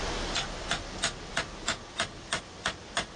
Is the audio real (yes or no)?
yes